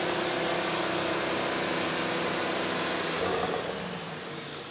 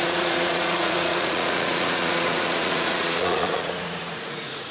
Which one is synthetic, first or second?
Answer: second